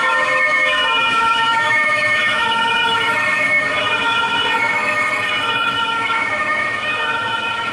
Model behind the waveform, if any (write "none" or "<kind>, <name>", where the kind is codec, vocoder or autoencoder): autoencoder, DAC-VAE